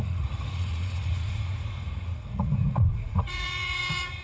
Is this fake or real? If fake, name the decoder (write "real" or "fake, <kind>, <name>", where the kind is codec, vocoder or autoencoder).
fake, vocoder, Vocos